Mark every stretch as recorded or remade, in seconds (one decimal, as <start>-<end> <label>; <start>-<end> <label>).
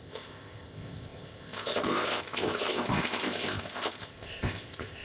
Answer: 0.0-5.0 remade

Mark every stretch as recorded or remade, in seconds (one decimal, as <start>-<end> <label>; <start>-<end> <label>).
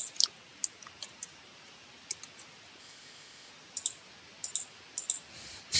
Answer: 0.0-2.8 recorded; 2.8-3.5 remade; 3.5-5.8 recorded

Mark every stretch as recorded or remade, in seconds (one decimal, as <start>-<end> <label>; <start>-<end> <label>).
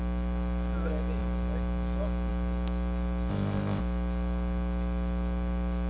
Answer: 0.0-3.3 recorded; 3.3-3.8 remade; 3.8-5.9 recorded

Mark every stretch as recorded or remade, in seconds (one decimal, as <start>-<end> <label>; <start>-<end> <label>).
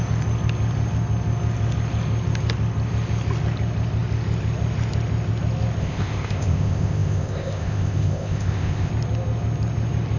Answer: 0.0-5.8 recorded; 5.8-8.9 remade; 8.9-10.2 recorded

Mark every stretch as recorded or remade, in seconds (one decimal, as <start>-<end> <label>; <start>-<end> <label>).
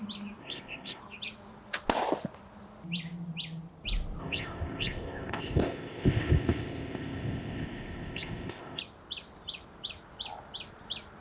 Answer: 0.0-0.4 recorded; 0.4-1.0 remade; 1.0-4.2 recorded; 4.2-8.8 remade; 8.8-11.2 recorded